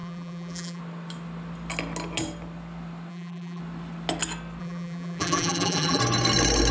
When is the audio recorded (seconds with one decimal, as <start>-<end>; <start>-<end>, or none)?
0.8-3.1; 3.6-4.6; 6.0-6.7

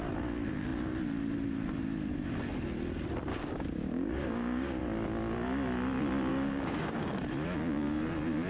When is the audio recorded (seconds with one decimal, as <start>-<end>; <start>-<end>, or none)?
0.0-3.3; 4.8-6.3; 7.2-8.5

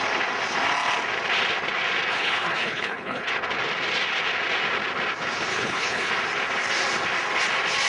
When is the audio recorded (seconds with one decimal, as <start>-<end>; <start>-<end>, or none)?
0.0-2.1; 3.3-5.5; 6.1-7.9

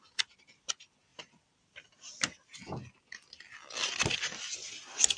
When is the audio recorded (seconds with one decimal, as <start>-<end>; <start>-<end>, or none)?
0.0-5.2

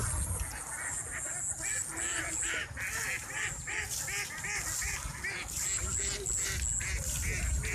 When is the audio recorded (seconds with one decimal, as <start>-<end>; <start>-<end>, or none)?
0.0-7.7

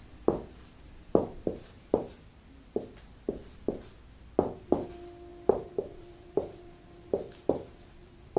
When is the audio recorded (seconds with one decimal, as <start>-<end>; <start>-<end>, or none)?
0.0-0.7; 2.1-5.3